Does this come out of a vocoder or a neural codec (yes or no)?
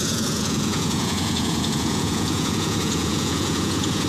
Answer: yes